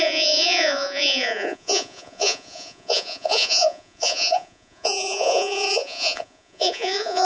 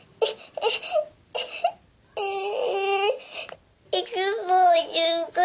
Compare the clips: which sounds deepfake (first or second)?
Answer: first